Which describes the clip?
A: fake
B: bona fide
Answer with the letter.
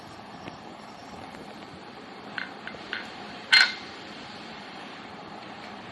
A